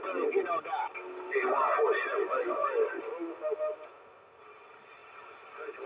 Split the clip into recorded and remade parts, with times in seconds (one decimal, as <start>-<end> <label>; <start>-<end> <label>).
0.0-5.9 recorded